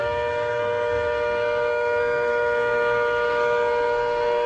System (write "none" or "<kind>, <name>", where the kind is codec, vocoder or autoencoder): codec, SNAC